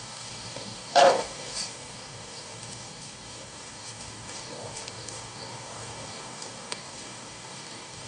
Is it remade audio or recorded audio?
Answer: remade